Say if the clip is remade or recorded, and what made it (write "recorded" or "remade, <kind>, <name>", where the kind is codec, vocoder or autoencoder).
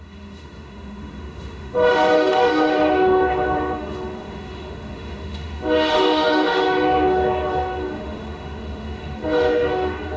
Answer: remade, autoencoder, DAC-VAE